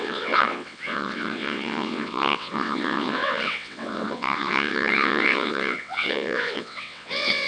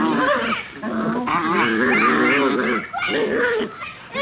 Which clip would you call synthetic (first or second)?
first